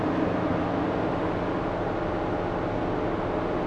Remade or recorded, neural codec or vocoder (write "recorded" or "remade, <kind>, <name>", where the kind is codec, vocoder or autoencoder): recorded